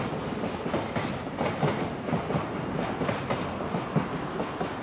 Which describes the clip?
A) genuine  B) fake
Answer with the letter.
A